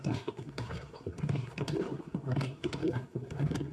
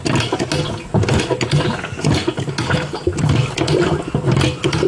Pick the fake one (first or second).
first